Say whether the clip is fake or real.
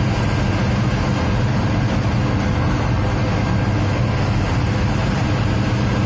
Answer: real